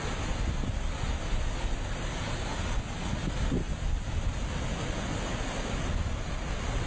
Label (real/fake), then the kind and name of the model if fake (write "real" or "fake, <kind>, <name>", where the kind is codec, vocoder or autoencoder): real